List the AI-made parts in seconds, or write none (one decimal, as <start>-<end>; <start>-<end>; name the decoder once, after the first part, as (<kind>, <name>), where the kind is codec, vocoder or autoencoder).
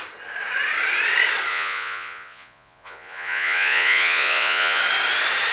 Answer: 1.5-4.8 (vocoder, Vocos)